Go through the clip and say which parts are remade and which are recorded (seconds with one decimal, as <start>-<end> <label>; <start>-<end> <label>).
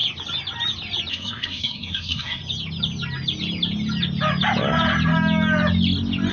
0.0-1.1 recorded; 1.1-2.4 remade; 2.4-6.3 recorded